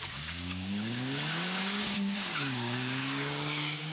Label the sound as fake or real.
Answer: fake